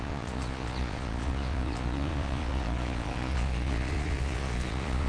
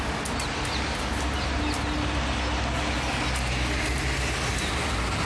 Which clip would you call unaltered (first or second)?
second